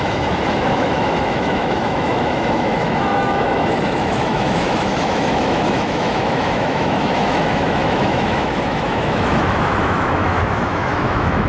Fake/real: fake